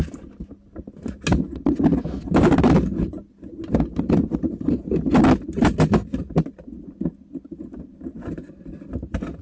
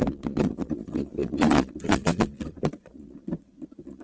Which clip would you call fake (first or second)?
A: second